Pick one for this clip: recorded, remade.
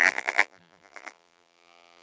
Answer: remade